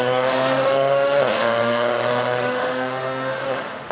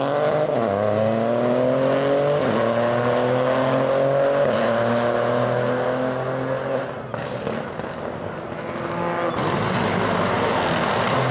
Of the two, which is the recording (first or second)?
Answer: second